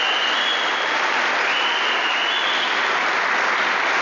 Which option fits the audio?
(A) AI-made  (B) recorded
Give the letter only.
B